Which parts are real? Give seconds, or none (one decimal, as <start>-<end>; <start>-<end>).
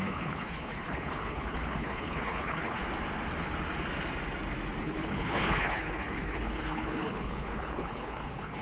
2.8-4.8